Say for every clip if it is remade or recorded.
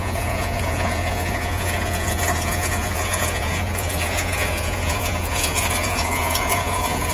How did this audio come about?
remade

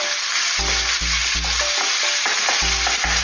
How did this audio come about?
recorded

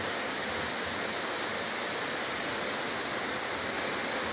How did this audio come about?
recorded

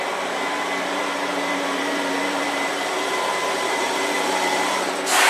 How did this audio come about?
remade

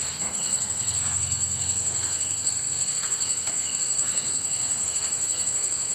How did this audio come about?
remade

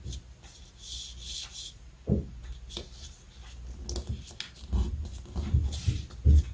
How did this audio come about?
recorded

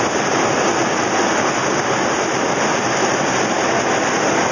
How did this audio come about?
recorded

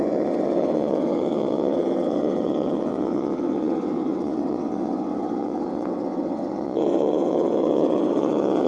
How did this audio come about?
remade